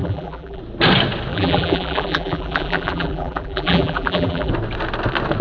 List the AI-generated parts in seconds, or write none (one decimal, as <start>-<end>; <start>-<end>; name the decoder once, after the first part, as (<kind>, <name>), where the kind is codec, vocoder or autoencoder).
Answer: 0.0-0.6 (vocoder, BigVGAN v2); 1.3-4.5